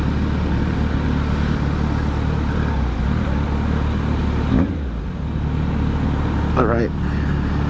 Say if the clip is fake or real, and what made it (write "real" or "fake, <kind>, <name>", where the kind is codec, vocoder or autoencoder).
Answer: real